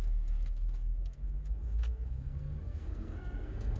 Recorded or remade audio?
remade